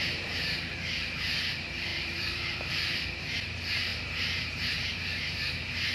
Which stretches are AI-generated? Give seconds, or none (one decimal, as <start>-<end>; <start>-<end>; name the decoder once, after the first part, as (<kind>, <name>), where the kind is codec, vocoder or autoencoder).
1.9-2.7 (vocoder, BigVGAN v2); 3.9-5.9